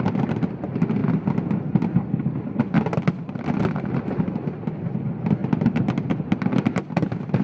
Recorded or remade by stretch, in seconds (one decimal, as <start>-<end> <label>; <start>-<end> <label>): 0.0-1.0 remade; 1.0-3.4 recorded; 3.4-5.4 remade; 5.4-5.9 recorded; 5.9-7.4 remade